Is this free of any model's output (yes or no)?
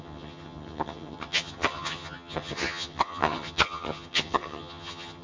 no